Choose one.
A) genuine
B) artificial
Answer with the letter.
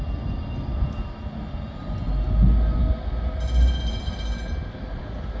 A